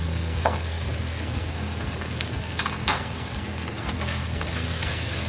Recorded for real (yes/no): no